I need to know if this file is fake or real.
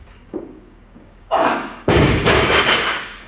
fake